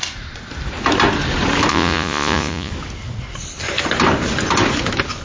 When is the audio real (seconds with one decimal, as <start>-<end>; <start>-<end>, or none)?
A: 0.0-1.7; 2.7-5.2